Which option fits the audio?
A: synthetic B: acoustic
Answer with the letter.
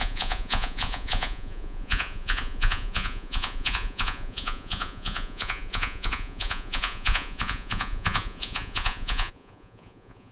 A